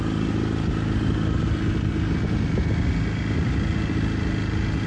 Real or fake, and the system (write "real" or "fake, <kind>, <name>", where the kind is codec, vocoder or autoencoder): real